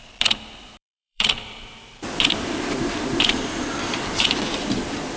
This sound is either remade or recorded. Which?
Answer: remade